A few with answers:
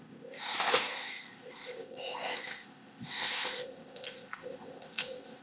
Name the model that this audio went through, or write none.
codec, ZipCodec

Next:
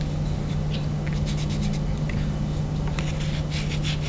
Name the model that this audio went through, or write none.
none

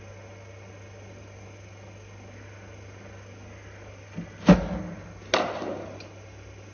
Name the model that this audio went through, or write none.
none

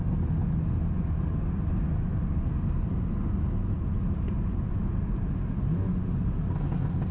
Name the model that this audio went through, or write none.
none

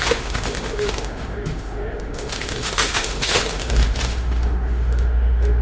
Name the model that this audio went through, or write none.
autoencoder, DAC-VAE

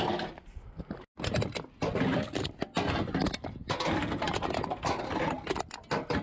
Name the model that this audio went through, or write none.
none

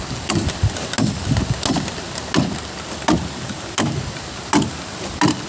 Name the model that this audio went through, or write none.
none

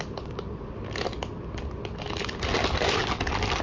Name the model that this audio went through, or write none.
none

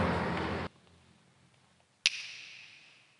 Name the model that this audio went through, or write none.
none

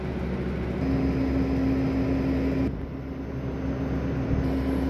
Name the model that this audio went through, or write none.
none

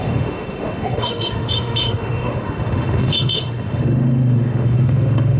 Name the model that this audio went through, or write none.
autoencoder, DAC-VAE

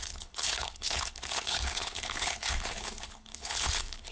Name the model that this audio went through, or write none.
codec, HILCodec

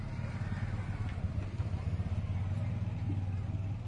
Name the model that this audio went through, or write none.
none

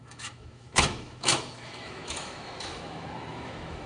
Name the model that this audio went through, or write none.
autoencoder, DAC-VAE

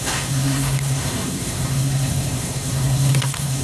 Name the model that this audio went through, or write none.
codec, SNAC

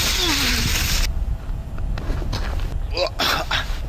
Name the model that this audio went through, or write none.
none